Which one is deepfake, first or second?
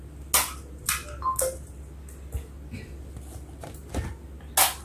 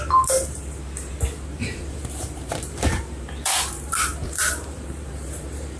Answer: second